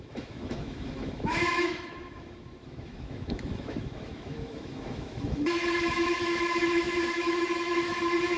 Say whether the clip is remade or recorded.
remade